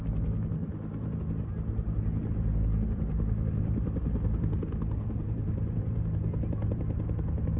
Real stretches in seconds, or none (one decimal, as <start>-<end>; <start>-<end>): 0.0-0.6; 1.2-2.2; 6.8-7.6